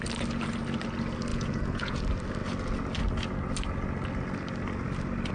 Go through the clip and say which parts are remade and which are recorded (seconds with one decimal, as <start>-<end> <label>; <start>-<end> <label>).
0.0-1.3 recorded; 1.3-2.0 remade; 2.0-5.3 recorded